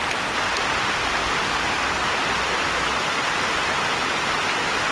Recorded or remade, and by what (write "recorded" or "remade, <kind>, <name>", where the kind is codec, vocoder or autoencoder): recorded